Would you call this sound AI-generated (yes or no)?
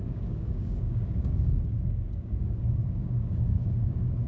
yes